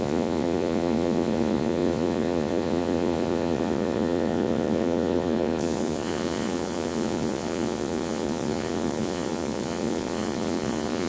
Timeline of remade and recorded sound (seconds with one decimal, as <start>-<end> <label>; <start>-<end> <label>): 0.0-11.1 remade